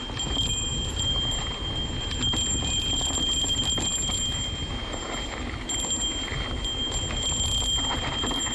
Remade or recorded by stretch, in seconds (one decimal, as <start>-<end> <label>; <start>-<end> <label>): 0.0-8.5 recorded